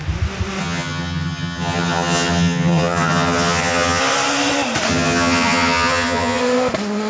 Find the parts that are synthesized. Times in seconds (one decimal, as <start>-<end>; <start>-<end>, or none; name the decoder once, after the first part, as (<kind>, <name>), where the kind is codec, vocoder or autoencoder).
0.6-4.0 (vocoder, HiFi-GAN); 4.9-6.4